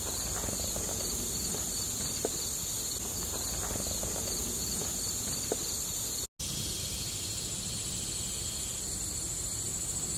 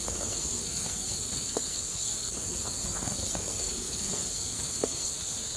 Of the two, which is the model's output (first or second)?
second